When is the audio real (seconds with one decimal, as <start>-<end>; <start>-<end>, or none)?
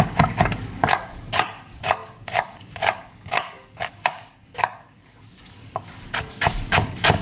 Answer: none